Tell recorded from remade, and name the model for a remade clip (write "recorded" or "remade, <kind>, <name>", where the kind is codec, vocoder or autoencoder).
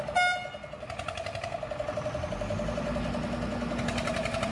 recorded